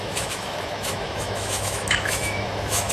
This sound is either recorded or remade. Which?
remade